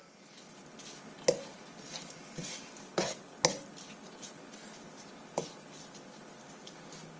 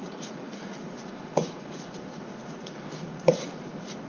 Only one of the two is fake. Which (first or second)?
second